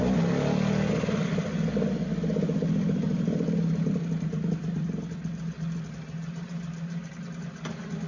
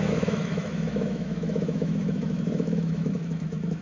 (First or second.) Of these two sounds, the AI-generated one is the second